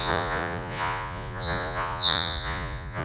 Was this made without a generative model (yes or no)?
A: no